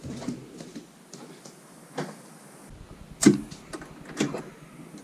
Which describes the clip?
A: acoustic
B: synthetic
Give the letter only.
A